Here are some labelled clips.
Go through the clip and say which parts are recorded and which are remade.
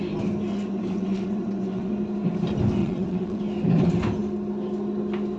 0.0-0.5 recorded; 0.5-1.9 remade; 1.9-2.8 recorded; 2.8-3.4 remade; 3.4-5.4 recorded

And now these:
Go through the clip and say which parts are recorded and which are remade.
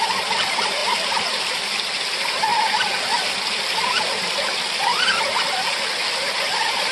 0.0-0.8 remade; 0.8-2.0 recorded; 2.0-2.5 remade; 2.5-3.6 recorded; 3.6-5.3 remade; 5.3-6.2 recorded; 6.2-6.9 remade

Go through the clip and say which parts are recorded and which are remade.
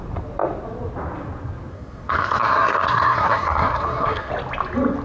0.0-1.7 recorded; 1.7-4.3 remade; 4.3-5.0 recorded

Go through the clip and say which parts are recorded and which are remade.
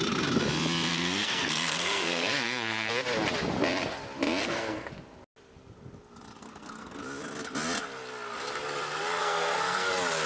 0.0-0.9 recorded; 0.9-2.9 remade; 2.9-4.4 recorded; 4.4-4.9 remade; 4.9-6.4 recorded; 6.4-7.0 remade; 7.0-9.2 recorded; 9.2-9.9 remade; 9.9-10.3 recorded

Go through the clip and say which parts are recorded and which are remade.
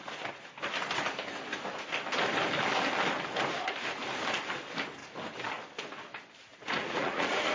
0.0-6.5 recorded; 6.5-7.5 remade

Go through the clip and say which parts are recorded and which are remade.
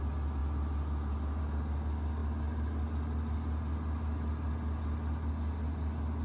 0.0-6.2 recorded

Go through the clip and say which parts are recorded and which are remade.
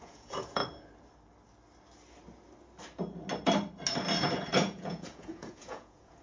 0.0-0.6 remade; 0.6-4.3 recorded; 4.3-6.2 remade